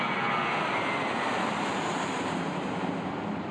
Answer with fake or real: real